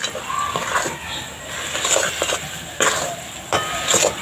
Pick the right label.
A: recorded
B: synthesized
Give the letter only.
A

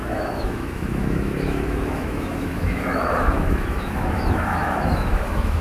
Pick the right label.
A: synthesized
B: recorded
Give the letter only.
A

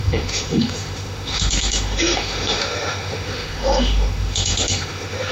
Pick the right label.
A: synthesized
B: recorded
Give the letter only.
A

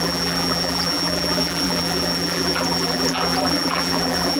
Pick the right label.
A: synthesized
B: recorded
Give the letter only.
A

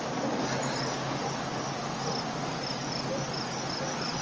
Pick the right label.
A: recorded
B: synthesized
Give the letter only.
A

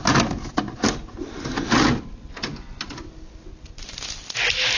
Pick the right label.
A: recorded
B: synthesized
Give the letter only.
A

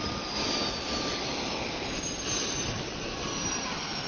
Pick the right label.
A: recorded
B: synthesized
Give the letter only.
A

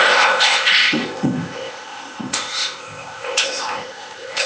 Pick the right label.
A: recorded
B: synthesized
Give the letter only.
B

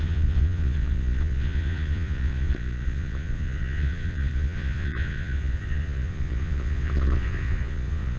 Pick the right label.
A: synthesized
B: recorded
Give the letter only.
A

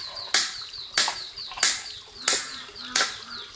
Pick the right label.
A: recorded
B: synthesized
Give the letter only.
A